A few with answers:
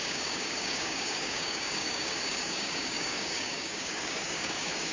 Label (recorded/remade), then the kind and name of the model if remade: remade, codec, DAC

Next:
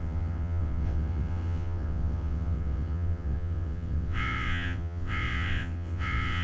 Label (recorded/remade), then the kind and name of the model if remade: remade, vocoder, WaveNeXt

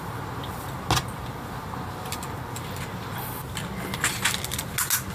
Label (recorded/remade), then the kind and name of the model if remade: recorded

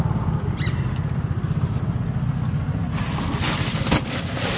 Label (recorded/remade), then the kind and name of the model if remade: recorded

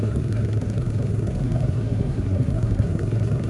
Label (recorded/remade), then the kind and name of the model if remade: remade, codec, SNAC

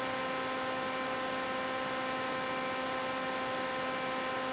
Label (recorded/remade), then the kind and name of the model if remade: recorded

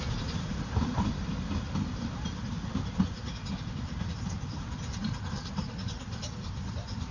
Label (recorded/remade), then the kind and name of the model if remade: remade, vocoder, BigVGAN v2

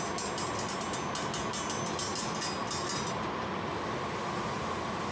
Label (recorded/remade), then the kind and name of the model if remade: recorded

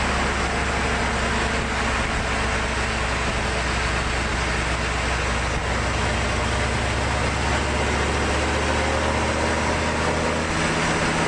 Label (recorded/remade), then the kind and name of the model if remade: recorded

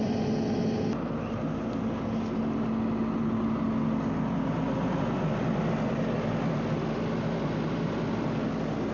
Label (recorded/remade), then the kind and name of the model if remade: recorded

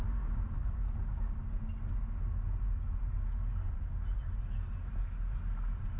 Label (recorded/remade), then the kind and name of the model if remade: recorded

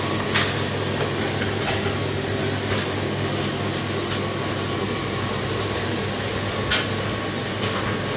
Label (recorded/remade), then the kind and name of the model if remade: recorded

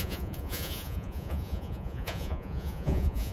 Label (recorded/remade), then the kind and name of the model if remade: remade, vocoder, Vocos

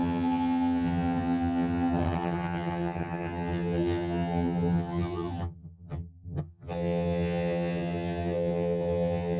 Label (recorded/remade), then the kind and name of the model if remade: remade, vocoder, HiFi-GAN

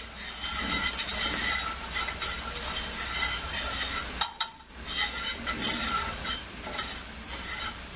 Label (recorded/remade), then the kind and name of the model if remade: recorded